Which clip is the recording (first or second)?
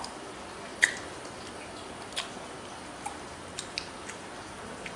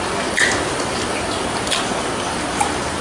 first